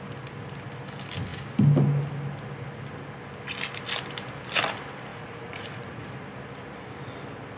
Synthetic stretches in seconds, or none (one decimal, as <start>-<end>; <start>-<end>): 5.1-6.1